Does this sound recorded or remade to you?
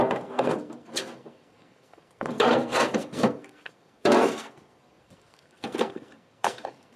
remade